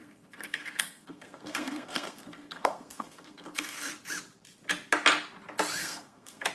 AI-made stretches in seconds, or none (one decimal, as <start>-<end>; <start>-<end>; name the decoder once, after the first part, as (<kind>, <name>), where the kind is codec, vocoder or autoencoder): 0.0-3.9 (codec, SNAC); 5.8-6.5